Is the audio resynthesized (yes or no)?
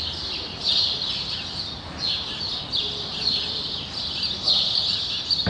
no